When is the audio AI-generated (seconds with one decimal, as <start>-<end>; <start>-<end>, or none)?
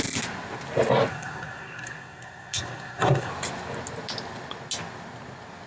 1.1-3.3